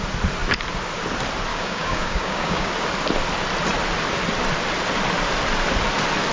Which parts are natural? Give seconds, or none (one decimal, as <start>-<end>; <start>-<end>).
0.0-1.5; 2.7-6.3